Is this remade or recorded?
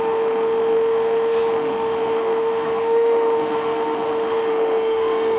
remade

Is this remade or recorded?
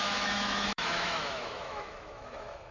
remade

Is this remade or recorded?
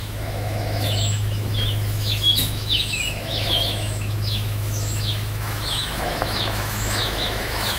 remade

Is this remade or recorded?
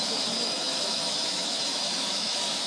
remade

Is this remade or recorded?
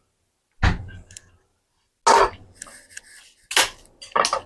recorded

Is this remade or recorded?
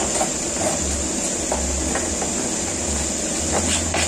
recorded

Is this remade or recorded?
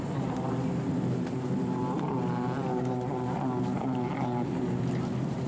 recorded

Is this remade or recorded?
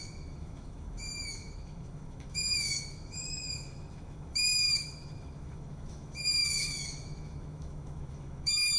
remade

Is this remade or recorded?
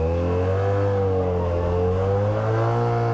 recorded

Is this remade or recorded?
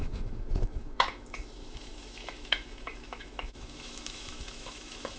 remade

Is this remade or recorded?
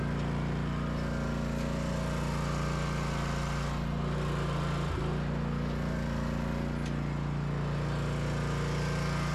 recorded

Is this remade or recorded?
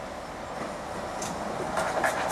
recorded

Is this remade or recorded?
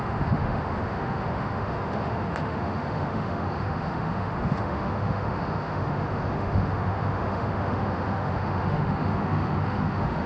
remade